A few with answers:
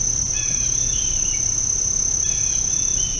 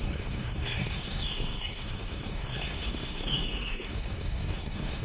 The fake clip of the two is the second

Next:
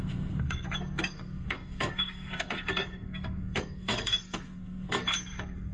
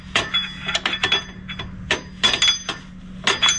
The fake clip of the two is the first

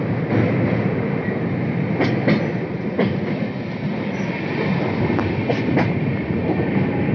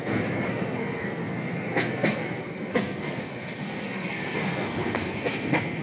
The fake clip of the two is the second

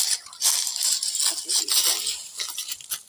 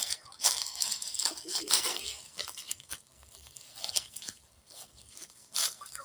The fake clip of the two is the second